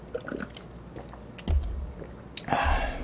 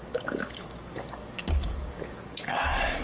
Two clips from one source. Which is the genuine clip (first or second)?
first